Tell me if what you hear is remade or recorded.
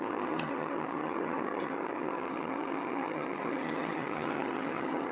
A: remade